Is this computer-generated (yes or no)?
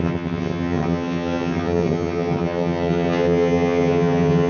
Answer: yes